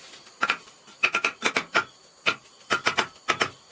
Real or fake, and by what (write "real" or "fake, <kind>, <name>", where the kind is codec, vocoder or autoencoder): real